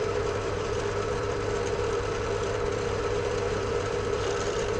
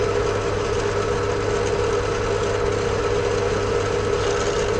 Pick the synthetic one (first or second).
first